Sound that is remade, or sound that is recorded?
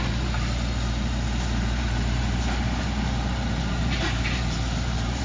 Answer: remade